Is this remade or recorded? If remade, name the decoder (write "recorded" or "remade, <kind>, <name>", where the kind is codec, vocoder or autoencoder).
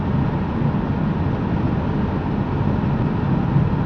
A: recorded